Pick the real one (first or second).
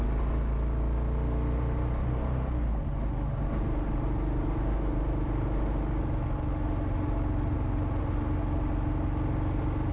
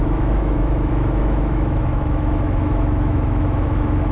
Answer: first